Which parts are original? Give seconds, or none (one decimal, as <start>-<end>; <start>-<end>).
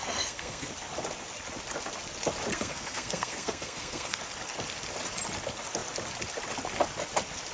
0.7-2.5; 4.2-7.5